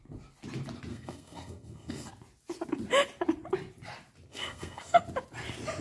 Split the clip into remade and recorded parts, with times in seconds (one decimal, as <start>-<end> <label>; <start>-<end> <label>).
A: 0.0-0.9 recorded; 0.9-2.1 remade; 2.1-4.3 recorded; 4.3-5.0 remade; 5.0-5.8 recorded